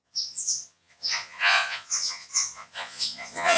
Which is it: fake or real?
fake